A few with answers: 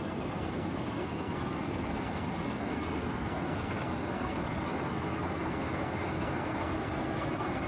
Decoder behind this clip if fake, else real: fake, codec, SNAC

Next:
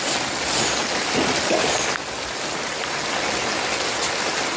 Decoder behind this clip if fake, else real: real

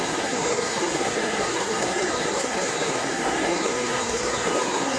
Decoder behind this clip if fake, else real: fake, codec, SNAC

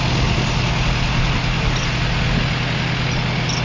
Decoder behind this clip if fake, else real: real